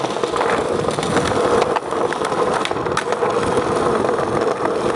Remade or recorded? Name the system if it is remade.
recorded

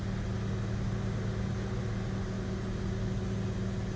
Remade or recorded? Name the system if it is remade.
recorded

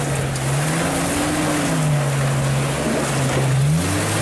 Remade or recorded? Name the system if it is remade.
recorded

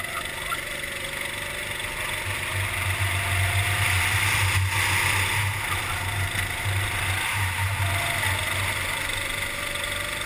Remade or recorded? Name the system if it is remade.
recorded